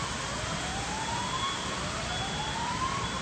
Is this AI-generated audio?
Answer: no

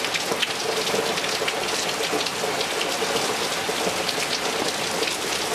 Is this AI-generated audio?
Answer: no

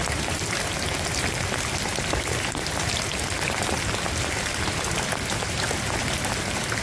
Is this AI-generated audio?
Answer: no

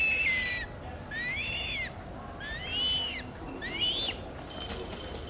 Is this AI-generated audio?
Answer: no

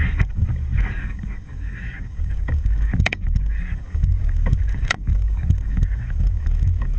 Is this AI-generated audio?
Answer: yes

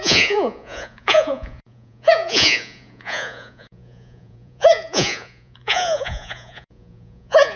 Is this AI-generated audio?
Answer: yes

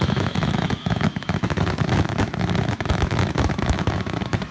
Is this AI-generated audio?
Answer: yes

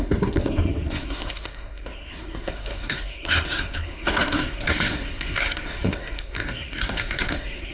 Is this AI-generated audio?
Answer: yes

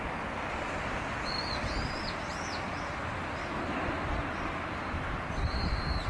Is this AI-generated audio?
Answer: no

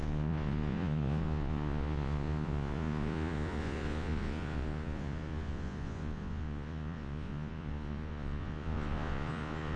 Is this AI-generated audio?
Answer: yes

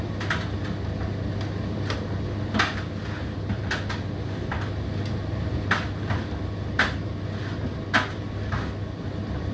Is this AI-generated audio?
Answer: no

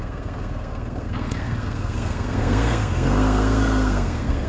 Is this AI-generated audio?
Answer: yes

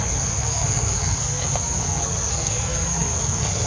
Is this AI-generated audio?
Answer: yes